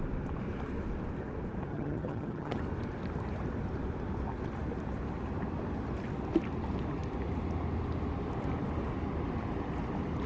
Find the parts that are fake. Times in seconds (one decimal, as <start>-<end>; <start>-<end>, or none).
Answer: 1.7-2.6